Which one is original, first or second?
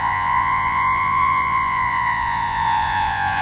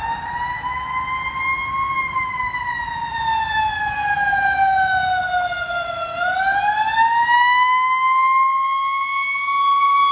second